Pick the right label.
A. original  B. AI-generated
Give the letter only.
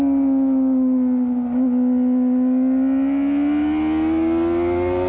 A